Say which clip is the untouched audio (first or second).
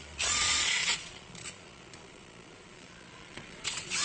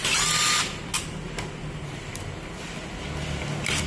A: second